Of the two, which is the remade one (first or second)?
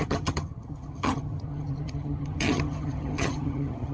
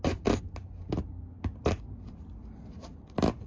first